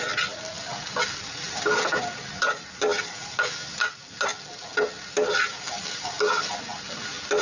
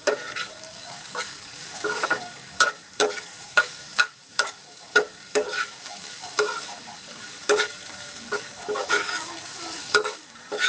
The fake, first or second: second